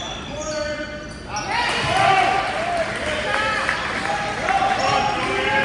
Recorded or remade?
recorded